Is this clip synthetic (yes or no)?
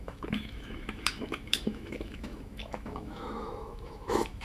yes